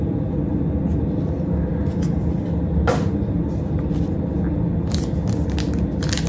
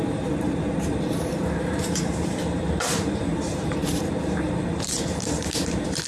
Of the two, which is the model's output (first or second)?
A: second